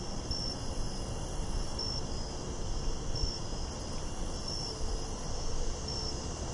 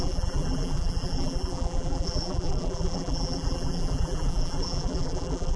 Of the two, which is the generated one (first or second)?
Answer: second